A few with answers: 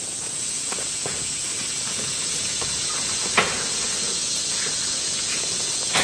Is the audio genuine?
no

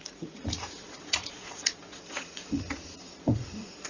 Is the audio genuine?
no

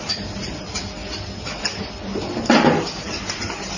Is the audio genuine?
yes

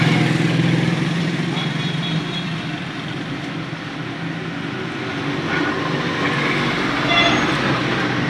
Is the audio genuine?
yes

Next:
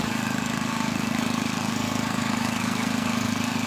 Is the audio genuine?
no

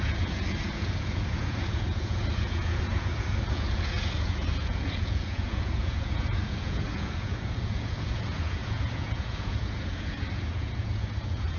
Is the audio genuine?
no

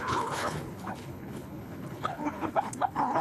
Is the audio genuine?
no